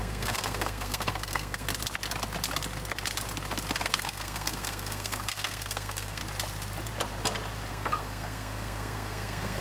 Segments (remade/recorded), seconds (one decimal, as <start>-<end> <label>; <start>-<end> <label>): 0.0-1.7 remade; 1.7-3.8 recorded; 3.8-6.2 remade; 6.2-7.7 recorded; 7.7-9.6 remade